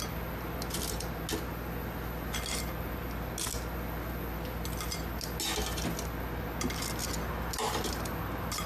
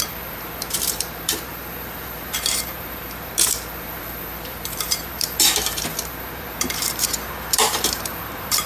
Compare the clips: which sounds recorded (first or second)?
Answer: first